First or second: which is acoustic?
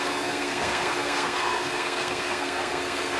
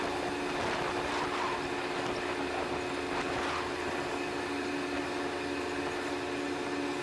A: second